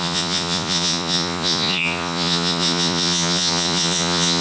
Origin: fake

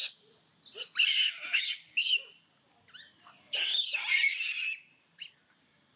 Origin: real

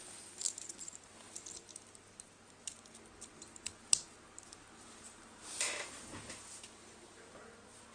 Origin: real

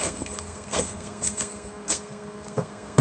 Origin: fake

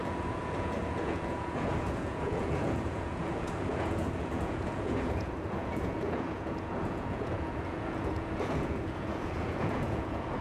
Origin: fake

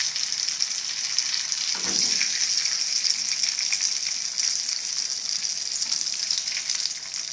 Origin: real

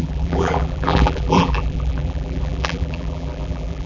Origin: fake